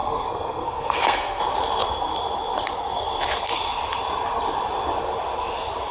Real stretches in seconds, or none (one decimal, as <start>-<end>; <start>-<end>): 1.4-5.9